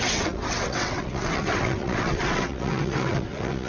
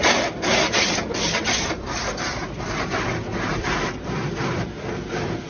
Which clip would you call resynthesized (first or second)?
first